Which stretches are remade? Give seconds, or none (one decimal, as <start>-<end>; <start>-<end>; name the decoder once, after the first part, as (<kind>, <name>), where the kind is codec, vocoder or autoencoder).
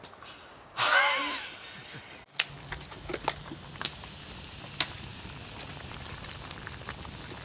0.5-1.1 (codec, DAC)